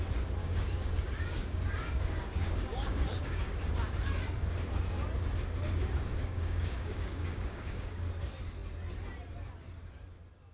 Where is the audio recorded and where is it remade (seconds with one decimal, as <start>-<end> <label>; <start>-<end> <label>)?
0.0-0.4 recorded; 0.4-3.7 remade; 3.7-6.2 recorded; 6.2-8.0 remade; 8.0-10.5 recorded